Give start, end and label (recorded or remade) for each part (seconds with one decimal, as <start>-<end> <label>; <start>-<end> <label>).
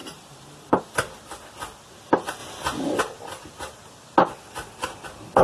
0.0-0.8 remade; 0.8-5.4 recorded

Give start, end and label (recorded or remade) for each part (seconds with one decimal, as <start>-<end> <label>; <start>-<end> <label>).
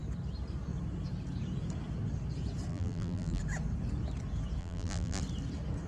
0.0-2.7 recorded; 2.7-3.4 remade; 3.4-4.6 recorded; 4.6-5.2 remade; 5.2-5.9 recorded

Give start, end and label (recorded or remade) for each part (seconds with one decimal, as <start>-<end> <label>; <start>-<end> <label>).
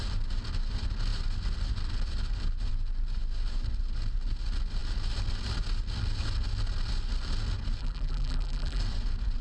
0.0-7.8 recorded; 7.8-8.8 remade; 8.8-9.4 recorded